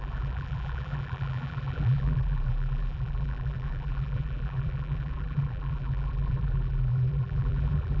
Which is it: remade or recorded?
remade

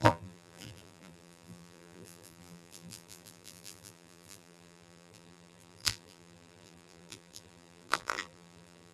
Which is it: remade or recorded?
remade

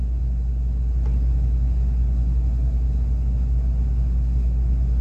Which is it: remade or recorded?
recorded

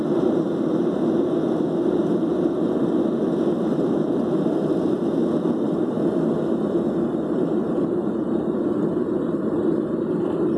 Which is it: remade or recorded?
recorded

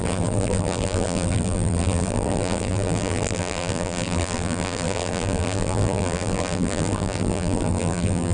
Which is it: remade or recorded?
remade